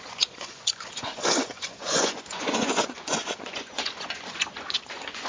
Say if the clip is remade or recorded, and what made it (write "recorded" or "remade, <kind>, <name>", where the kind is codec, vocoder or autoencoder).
remade, vocoder, Vocos